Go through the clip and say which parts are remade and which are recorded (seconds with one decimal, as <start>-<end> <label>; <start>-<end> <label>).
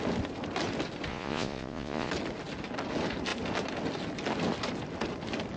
0.0-1.1 recorded; 1.1-2.1 remade; 2.1-5.6 recorded